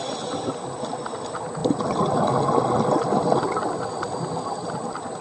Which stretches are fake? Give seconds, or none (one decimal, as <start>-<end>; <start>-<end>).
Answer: none